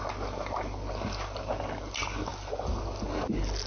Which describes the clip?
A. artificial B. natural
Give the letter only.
B